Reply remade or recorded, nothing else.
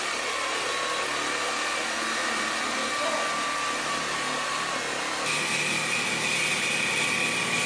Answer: recorded